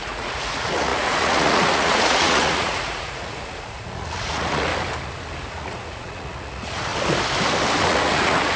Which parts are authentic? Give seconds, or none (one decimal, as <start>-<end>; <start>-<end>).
4.7-5.5; 6.9-7.8